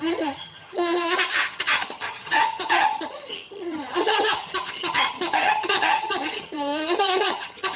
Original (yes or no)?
no